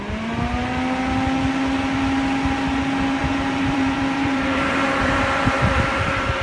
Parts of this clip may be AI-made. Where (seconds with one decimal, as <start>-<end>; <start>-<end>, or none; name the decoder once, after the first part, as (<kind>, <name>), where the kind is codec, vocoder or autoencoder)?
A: 3.2-6.4 (vocoder, BigVGAN v2)